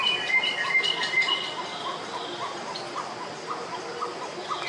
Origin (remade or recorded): remade